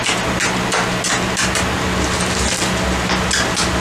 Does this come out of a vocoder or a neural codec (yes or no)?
no